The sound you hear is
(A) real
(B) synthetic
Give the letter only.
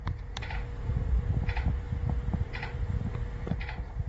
A